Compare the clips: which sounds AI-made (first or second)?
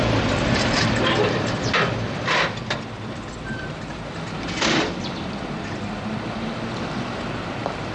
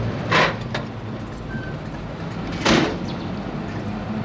first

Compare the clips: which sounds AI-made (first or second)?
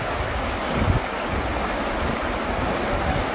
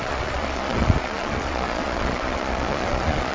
second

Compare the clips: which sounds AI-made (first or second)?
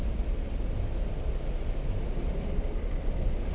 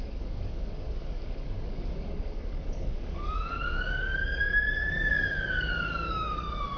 second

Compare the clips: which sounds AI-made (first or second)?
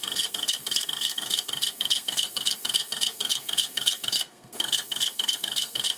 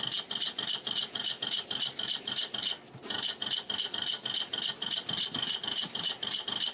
first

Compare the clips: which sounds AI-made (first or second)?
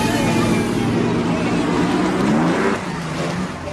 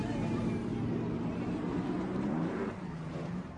second